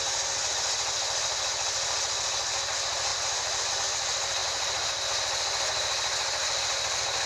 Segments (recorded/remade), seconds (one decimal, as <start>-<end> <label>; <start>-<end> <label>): 0.0-3.1 recorded; 3.1-3.7 remade; 3.7-4.4 recorded; 4.4-4.9 remade; 4.9-7.3 recorded